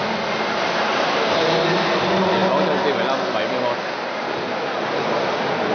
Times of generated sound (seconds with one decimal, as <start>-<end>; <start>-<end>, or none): none